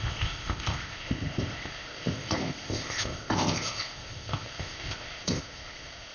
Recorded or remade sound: remade